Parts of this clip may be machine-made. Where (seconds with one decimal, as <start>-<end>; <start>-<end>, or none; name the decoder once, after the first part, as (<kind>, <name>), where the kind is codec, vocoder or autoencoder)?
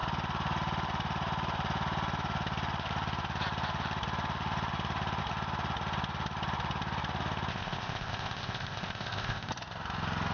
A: 7.5-9.5 (codec, ZipCodec)